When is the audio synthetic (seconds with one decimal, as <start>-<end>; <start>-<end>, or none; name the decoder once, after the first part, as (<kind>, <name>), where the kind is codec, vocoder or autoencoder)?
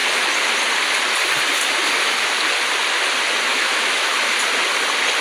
3.5-4.3 (autoencoder, DAC-VAE)